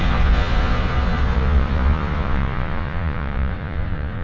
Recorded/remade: remade